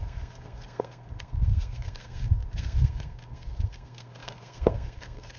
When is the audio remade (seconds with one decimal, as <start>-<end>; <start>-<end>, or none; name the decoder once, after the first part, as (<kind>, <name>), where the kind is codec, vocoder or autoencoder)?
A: 0.0-5.4 (codec, SNAC)